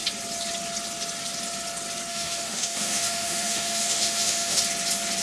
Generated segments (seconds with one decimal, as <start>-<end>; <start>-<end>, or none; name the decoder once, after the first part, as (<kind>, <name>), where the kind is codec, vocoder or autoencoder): 2.1-4.6 (autoencoder, DAC-VAE)